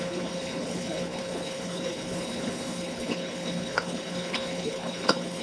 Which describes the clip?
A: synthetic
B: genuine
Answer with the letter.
A